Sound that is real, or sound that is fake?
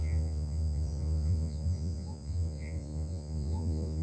fake